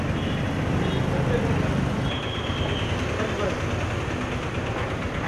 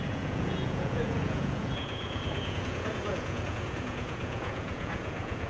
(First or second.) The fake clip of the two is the second